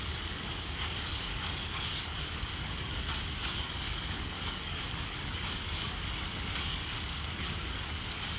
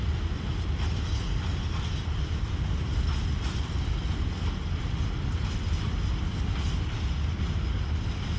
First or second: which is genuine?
second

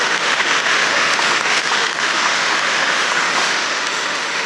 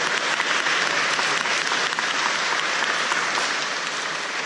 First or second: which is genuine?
second